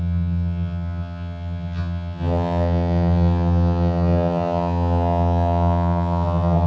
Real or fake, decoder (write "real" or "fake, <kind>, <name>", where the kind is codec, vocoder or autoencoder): fake, vocoder, HiFi-GAN